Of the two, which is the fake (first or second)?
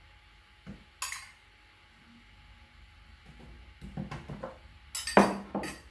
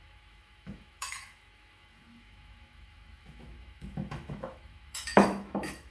second